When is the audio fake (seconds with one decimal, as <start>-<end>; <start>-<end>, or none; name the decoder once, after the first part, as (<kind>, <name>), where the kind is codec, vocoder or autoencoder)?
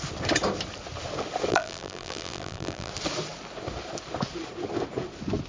1.5-2.9 (vocoder, BigVGAN v2)